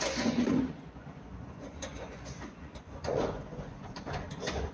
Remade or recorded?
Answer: remade